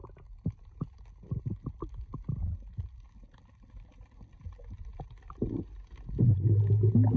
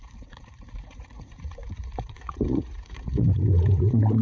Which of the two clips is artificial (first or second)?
second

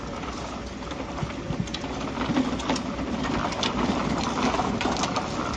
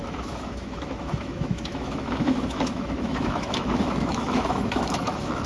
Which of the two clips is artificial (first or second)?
second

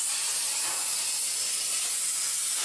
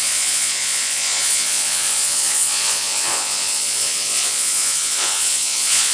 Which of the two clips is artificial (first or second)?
second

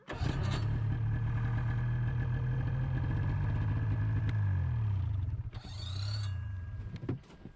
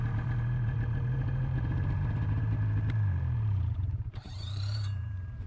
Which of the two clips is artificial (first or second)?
second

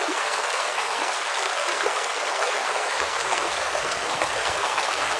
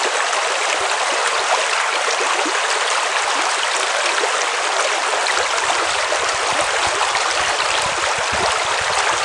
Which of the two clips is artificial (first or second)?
first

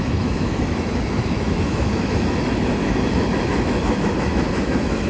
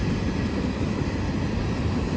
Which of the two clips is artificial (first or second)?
first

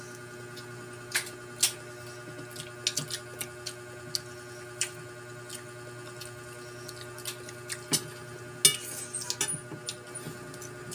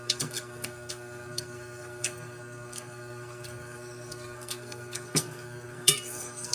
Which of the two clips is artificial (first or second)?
second